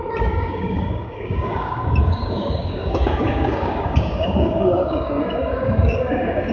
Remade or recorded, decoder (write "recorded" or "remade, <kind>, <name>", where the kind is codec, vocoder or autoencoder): remade, codec, DAC